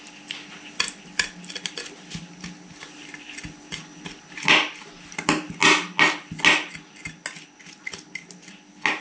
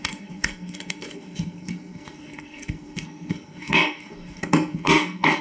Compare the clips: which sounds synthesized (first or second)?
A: second